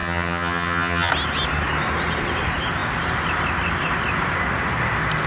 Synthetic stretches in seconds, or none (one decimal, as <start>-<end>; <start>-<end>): 0.0-1.1